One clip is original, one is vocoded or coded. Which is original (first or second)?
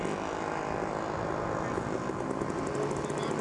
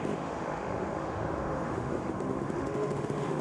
first